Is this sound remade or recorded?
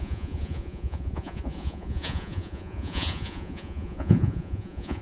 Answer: remade